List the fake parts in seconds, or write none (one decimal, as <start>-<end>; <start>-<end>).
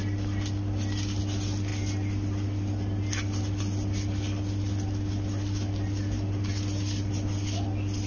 none